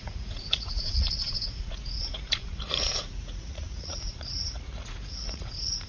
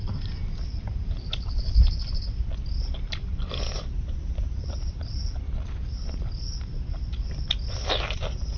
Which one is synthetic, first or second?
first